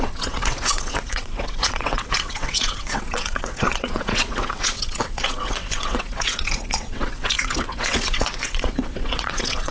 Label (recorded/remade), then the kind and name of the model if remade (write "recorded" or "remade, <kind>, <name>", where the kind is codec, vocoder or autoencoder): remade, vocoder, WaveNeXt